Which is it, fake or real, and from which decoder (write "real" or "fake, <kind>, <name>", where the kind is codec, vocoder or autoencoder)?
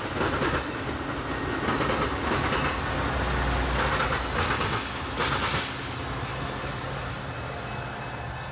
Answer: real